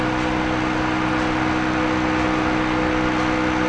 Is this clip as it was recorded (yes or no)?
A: yes